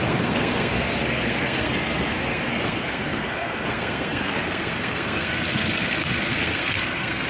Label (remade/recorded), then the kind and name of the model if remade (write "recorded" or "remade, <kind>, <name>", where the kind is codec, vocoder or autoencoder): remade, codec, SNAC